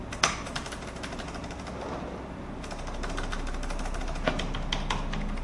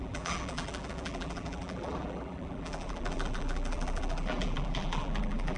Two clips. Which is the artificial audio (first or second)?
second